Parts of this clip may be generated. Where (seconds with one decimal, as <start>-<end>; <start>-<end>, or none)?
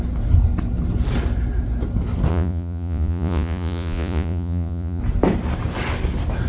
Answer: 2.3-5.0